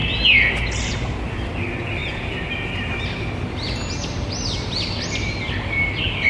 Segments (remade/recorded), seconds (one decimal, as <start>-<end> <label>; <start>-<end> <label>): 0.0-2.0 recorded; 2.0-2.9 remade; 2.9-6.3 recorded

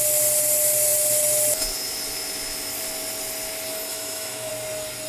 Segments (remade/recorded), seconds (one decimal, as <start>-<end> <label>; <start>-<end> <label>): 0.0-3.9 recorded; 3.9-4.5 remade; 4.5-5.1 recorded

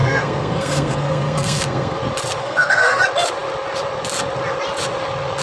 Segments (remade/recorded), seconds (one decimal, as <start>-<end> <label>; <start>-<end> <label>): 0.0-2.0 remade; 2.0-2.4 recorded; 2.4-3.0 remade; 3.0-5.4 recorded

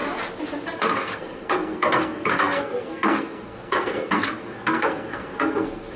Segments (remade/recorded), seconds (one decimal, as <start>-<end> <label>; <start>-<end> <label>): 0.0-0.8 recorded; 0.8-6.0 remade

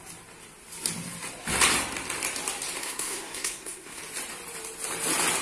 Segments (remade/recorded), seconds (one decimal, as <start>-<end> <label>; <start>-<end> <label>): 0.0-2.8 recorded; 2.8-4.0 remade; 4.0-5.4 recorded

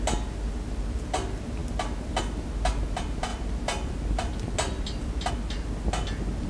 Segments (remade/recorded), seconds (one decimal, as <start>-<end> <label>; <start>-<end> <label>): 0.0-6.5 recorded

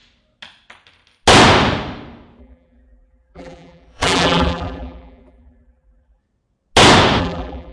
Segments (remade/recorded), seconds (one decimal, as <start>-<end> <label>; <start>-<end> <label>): 0.0-2.4 recorded; 2.4-6.2 remade; 6.2-7.2 recorded; 7.2-7.7 remade

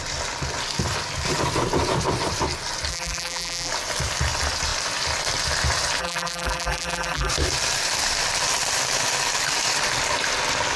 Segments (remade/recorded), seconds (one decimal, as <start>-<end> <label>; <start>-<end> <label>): 0.0-2.9 recorded; 2.9-3.7 remade; 3.7-6.0 recorded; 6.0-7.3 remade; 7.3-10.8 recorded